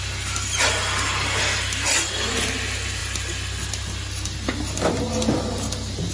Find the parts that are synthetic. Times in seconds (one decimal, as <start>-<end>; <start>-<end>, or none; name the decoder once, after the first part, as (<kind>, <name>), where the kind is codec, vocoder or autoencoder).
none